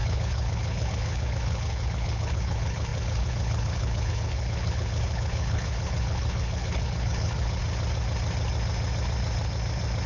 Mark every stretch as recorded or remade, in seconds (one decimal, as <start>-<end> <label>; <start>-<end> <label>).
0.0-7.6 remade; 7.6-10.1 recorded